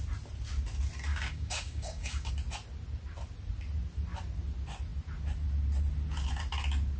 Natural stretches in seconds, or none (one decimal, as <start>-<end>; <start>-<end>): 0.0-1.1; 2.3-7.0